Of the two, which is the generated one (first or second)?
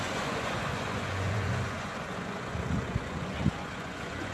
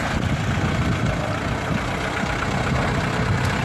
first